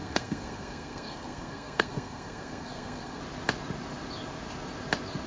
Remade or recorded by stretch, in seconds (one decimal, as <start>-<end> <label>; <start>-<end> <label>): 0.0-3.2 remade; 3.2-5.3 recorded